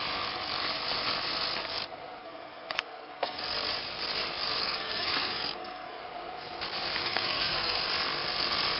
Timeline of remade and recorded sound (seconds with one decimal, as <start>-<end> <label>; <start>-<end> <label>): 0.0-2.2 recorded; 2.2-3.4 remade; 3.4-4.6 recorded; 4.6-6.0 remade; 6.0-7.0 recorded; 7.0-7.8 remade; 7.8-8.8 recorded